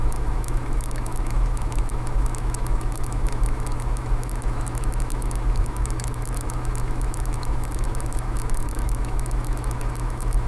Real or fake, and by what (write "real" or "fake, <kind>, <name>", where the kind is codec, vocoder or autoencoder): fake, autoencoder, DAC-VAE